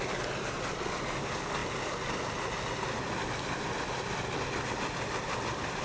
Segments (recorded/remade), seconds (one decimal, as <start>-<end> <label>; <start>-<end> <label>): 0.0-5.8 recorded